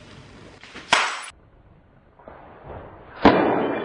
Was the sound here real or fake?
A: real